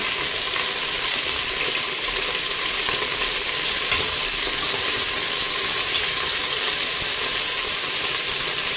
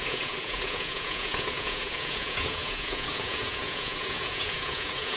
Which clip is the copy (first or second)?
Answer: second